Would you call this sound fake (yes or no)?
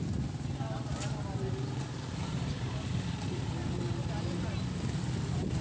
no